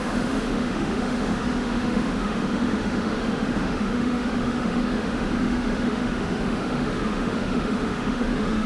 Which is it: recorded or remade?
remade